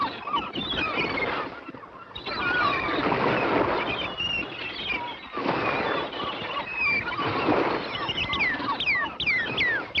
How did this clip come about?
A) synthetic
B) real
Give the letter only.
B